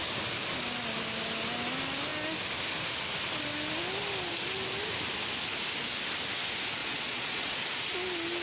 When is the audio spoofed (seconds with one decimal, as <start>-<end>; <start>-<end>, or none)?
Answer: 6.8-7.6